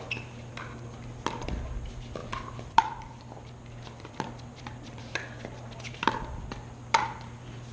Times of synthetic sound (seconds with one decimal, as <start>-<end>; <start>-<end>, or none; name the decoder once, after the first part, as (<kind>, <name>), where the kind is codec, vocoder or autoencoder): 2.2-5.0 (vocoder, BigVGAN v2)

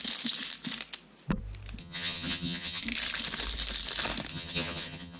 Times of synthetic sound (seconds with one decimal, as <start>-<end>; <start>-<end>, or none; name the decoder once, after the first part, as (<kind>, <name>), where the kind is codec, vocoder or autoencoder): 1.8-2.8 (vocoder, HiFi-GAN); 4.3-5.2

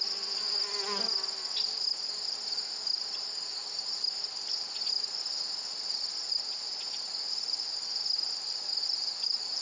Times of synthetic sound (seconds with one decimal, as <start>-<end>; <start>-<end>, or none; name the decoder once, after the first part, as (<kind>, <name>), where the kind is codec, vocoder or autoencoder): none

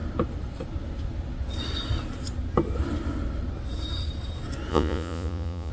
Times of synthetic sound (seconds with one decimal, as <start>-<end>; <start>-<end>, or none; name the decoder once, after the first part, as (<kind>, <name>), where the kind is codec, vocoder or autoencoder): 4.7-5.7 (vocoder, Vocos)

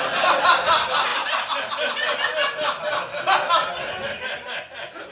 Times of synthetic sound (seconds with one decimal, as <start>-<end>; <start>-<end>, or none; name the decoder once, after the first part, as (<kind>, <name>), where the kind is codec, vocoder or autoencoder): none